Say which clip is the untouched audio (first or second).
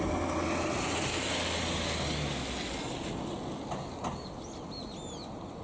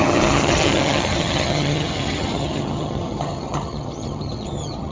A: first